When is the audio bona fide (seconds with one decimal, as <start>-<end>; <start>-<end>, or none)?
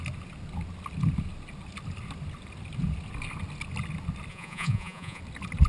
0.0-4.3; 5.2-5.7